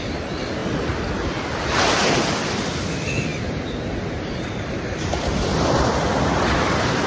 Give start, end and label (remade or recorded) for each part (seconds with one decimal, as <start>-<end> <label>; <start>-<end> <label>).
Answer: 0.0-3.3 recorded; 3.3-5.2 remade; 5.2-7.1 recorded